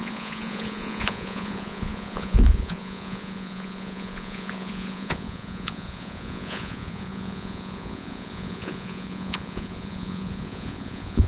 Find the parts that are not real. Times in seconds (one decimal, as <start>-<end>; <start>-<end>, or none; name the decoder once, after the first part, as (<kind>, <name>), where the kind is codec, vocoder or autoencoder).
0.0-11.3 (vocoder, Vocos)